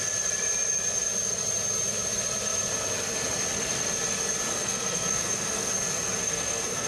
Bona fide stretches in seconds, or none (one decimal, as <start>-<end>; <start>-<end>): 0.0-4.5; 5.7-6.2